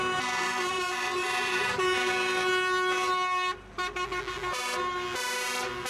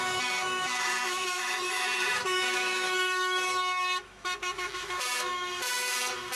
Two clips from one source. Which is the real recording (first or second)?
first